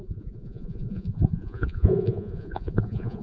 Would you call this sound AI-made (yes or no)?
yes